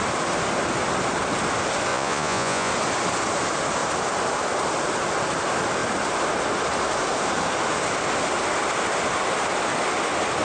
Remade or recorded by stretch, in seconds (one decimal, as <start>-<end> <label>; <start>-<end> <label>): 0.0-1.9 recorded; 1.9-2.7 remade; 2.7-10.4 recorded